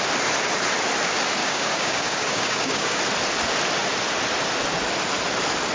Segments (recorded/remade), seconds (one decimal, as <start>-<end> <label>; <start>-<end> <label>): 0.0-1.4 recorded; 1.4-3.0 remade; 3.0-5.7 recorded